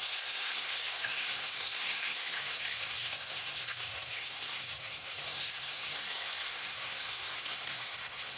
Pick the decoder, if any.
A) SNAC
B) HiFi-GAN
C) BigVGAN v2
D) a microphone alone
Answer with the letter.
A